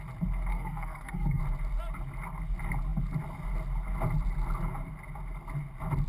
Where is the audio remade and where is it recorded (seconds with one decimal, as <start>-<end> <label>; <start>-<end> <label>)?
0.0-0.5 recorded; 0.5-1.4 remade; 1.4-6.1 recorded